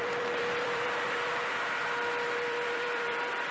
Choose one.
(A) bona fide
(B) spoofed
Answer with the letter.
B